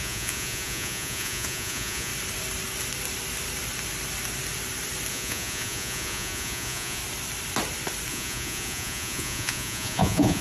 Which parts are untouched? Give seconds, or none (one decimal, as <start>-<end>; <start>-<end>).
2.1-5.1; 7.0-8.1

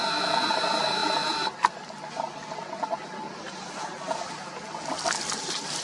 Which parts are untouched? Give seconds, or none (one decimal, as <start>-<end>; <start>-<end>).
0.0-5.8

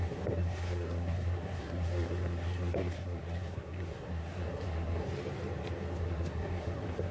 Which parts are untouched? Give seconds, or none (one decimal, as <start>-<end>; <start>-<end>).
5.1-5.9

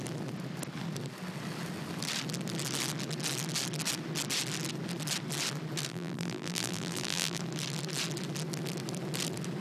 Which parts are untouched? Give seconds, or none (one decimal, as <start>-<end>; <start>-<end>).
0.0-5.9; 7.4-9.6

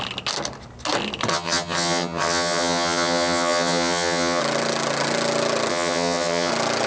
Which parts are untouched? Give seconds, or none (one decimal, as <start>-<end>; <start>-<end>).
0.0-1.3; 4.4-5.7; 6.5-6.9

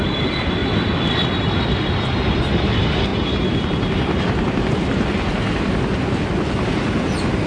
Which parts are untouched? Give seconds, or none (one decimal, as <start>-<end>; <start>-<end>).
0.6-1.1; 3.1-4.7